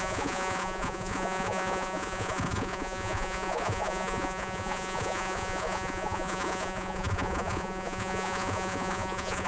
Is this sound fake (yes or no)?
yes